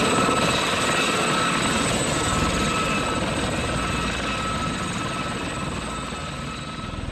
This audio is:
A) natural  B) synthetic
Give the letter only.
A